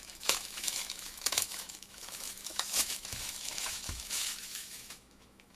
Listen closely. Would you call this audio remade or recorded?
remade